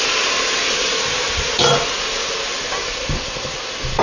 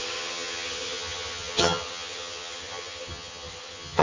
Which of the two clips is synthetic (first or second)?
second